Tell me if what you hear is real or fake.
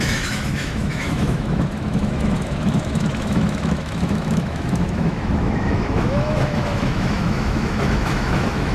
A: fake